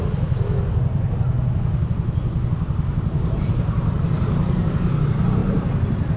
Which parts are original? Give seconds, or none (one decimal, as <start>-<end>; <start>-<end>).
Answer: 0.0-2.9; 5.0-5.4